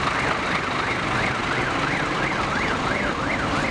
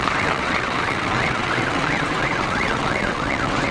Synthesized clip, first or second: second